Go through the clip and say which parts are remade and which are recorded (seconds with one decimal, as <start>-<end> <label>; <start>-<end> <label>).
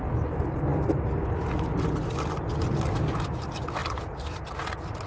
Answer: 0.0-3.8 recorded; 3.8-4.5 remade; 4.5-5.1 recorded